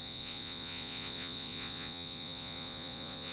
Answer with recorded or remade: remade